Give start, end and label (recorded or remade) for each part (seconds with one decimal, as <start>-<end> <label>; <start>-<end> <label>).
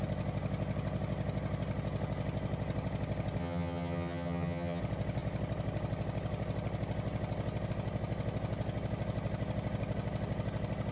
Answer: 0.0-3.4 recorded; 3.4-4.8 remade; 4.8-10.9 recorded